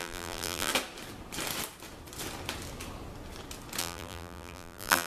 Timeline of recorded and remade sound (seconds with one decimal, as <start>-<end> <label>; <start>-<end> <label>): 0.0-0.7 remade; 0.7-3.8 recorded; 3.8-5.1 remade